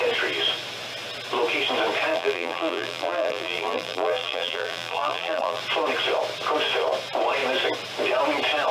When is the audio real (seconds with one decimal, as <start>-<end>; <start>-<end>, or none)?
0.0-2.1; 5.6-8.7